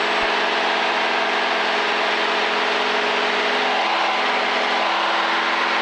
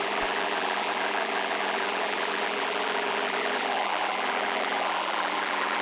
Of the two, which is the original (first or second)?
first